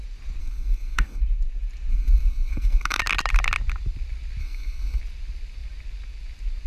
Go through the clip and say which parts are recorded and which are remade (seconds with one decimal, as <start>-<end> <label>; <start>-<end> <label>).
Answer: 0.0-0.4 recorded; 0.4-1.2 remade; 1.2-1.9 recorded; 1.9-3.0 remade; 3.0-4.4 recorded; 4.4-5.0 remade; 5.0-6.7 recorded